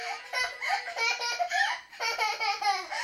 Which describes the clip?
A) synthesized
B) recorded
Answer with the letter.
B